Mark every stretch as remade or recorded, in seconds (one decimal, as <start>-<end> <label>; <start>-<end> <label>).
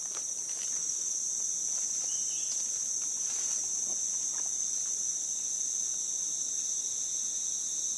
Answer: 0.0-0.8 recorded; 0.8-1.3 remade; 1.3-8.0 recorded